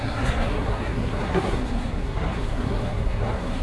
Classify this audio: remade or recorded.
remade